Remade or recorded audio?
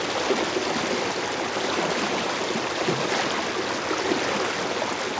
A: recorded